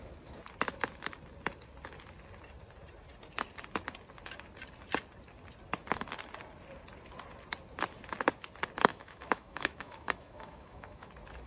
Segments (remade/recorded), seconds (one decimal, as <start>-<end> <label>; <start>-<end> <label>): 0.0-8.9 recorded; 8.9-11.1 remade; 11.1-11.5 recorded